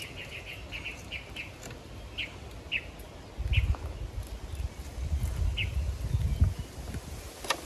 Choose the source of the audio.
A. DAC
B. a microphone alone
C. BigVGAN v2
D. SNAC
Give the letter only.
B